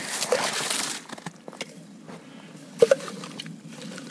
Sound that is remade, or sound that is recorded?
recorded